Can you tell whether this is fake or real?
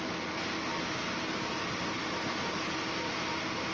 real